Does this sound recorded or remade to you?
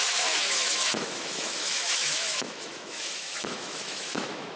remade